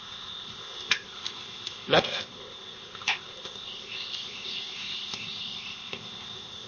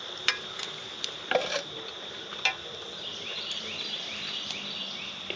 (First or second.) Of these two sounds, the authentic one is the second